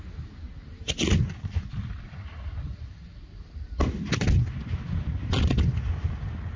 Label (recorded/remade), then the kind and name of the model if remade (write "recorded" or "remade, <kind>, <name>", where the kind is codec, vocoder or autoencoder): recorded